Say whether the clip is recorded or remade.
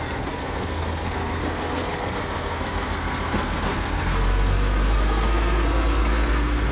remade